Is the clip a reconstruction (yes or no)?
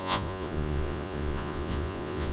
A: yes